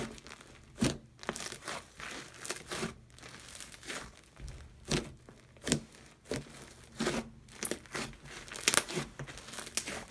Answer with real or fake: real